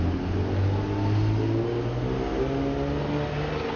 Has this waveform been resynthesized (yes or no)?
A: no